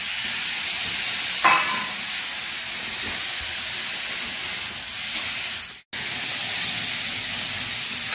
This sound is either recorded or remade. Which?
recorded